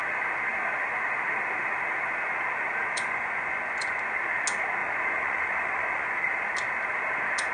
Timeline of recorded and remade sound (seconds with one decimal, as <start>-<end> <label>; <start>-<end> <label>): 0.0-2.8 recorded; 2.8-4.0 remade; 4.0-4.8 recorded; 4.8-6.4 remade; 6.4-7.5 recorded